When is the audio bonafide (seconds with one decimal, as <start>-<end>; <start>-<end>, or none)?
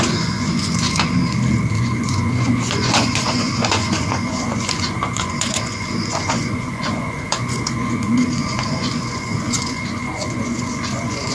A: 1.2-1.8